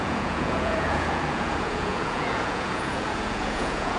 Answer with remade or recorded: remade